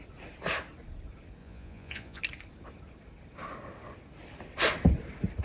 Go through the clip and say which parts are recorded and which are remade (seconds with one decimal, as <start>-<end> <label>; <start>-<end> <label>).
0.0-1.4 recorded; 1.4-2.2 remade; 2.2-5.4 recorded